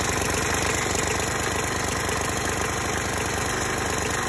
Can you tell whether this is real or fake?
real